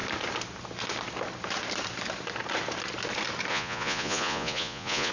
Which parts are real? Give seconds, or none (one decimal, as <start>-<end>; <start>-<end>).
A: 0.0-3.5